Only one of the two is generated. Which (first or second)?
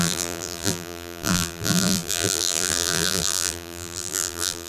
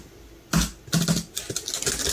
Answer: first